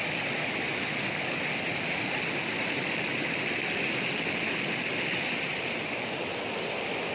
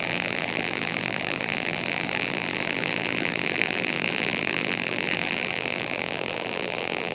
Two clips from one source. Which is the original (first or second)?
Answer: first